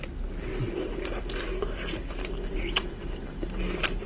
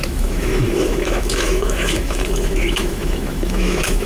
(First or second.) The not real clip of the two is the second